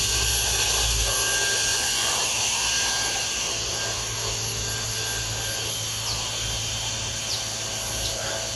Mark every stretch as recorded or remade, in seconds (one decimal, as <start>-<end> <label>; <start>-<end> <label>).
0.0-1.7 recorded; 1.7-2.2 remade; 2.2-8.6 recorded